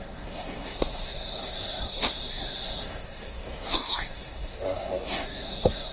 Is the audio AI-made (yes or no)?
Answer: yes